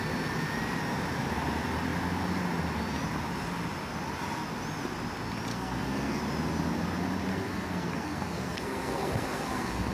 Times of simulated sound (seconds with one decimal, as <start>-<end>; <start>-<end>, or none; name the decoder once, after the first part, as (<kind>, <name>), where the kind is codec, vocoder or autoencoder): 5.5-6.2 (codec, SNAC); 7.3-9.9